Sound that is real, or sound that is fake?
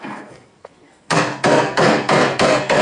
fake